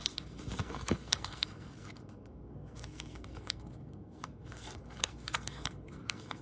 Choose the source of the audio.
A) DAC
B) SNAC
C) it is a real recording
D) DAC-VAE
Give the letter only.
B